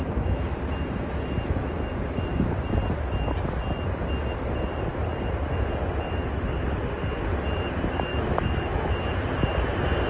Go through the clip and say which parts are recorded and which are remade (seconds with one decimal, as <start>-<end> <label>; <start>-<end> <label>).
0.0-8.1 recorded; 8.1-8.9 remade; 8.9-10.1 recorded